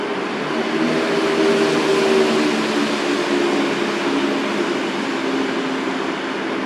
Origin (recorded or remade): recorded